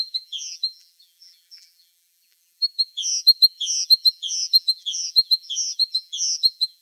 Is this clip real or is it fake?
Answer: fake